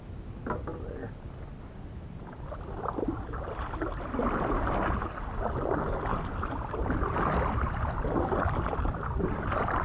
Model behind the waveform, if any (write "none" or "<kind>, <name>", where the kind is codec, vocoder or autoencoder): none